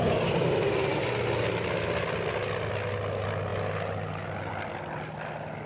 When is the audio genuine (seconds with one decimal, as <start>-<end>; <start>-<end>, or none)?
0.0-5.7